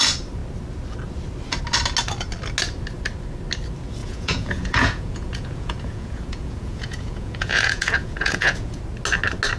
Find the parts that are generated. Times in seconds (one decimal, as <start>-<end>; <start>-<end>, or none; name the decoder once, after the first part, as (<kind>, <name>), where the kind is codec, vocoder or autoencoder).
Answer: 4.0-8.8 (vocoder, Vocos)